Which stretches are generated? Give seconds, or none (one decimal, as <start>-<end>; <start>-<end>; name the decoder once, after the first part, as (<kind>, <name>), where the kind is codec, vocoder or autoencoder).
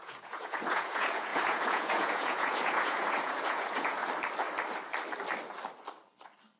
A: 0.0-4.0 (vocoder, Vocos)